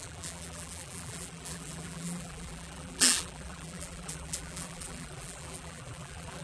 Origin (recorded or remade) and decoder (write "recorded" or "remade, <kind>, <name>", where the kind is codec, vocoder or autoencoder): remade, vocoder, BigVGAN v2